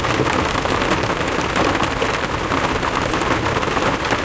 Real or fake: real